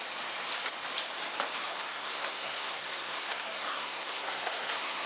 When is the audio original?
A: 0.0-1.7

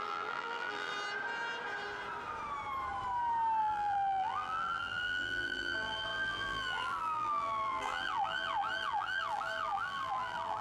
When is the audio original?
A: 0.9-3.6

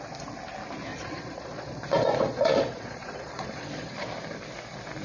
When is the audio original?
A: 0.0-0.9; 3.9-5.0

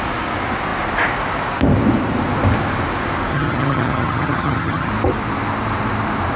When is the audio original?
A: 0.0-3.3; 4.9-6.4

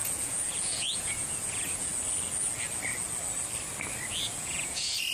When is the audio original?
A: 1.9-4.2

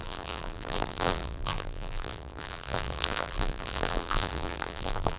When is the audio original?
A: none

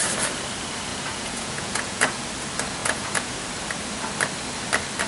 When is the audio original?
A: 0.0-0.9; 2.2-2.8; 3.3-5.1

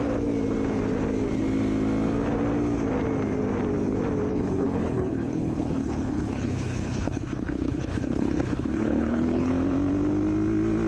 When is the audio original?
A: 0.0-4.3; 9.5-10.9